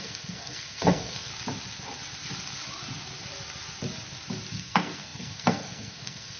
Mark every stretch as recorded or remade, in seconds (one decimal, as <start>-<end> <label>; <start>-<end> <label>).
0.0-1.3 remade; 1.3-4.5 recorded; 4.5-6.4 remade